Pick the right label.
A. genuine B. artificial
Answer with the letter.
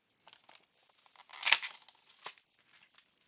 A